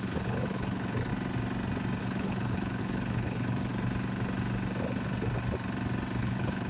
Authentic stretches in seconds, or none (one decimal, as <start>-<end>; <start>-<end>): 1.1-2.0; 3.7-6.2